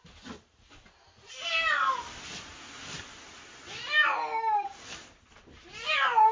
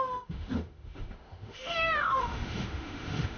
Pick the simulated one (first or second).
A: second